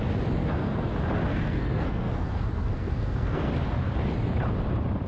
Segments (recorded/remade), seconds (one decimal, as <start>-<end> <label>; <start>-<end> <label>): 0.0-0.4 recorded; 0.4-0.9 remade; 0.9-1.3 recorded; 1.3-3.5 remade; 3.5-5.1 recorded